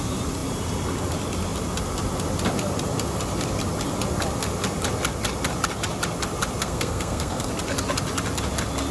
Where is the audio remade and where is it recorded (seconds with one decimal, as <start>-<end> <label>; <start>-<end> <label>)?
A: 0.0-6.6 recorded; 6.6-7.5 remade; 7.5-8.9 recorded